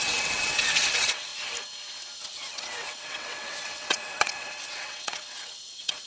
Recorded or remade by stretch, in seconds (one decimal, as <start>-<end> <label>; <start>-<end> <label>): 0.0-1.3 remade; 1.3-2.2 recorded; 2.2-6.1 remade